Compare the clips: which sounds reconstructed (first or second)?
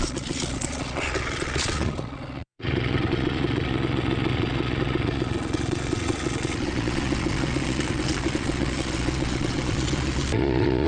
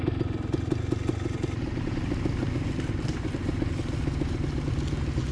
first